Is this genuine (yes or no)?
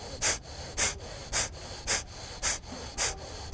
yes